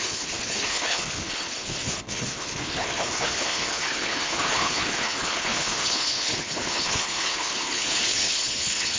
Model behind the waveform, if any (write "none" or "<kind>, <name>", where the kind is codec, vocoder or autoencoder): codec, HILCodec